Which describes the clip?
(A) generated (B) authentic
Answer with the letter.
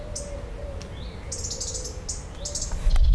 B